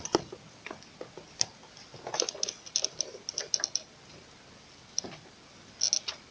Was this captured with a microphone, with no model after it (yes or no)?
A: yes